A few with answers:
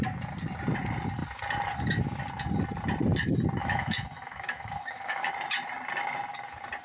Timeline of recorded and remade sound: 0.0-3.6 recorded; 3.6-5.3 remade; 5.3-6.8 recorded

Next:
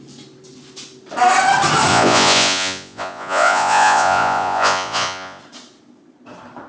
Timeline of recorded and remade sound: 0.0-1.9 recorded; 1.9-5.4 remade; 5.4-6.7 recorded

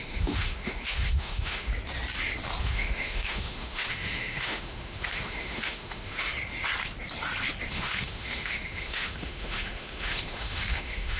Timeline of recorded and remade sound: 0.0-1.7 remade; 1.7-2.6 recorded; 2.6-6.3 remade; 6.3-7.7 recorded; 7.7-11.2 remade

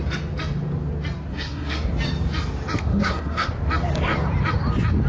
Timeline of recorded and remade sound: 0.0-1.3 recorded; 1.3-1.9 remade; 1.9-2.9 recorded; 2.9-3.5 remade; 3.5-5.1 recorded